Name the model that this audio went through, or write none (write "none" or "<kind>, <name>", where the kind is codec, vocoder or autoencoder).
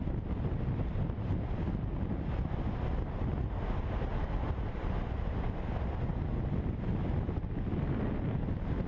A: none